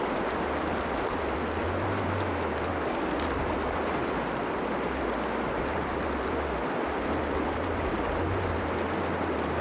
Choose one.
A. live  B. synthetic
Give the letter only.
A